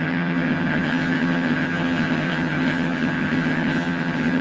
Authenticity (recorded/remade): remade